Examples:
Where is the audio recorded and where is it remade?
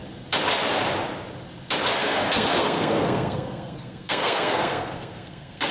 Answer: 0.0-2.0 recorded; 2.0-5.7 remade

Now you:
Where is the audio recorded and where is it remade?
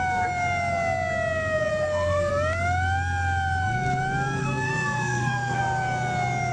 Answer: 0.0-1.7 recorded; 1.7-2.3 remade; 2.3-4.4 recorded; 4.4-5.6 remade; 5.6-6.5 recorded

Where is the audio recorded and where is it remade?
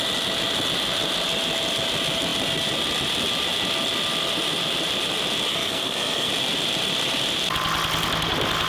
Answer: 0.0-5.5 recorded; 5.5-6.3 remade; 6.3-8.7 recorded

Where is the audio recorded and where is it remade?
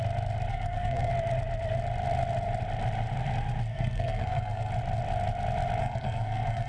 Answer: 0.0-0.5 recorded; 0.5-1.1 remade; 1.1-3.7 recorded; 3.7-4.7 remade; 4.7-5.8 recorded; 5.8-6.7 remade